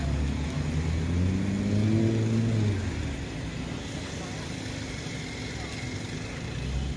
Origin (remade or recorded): recorded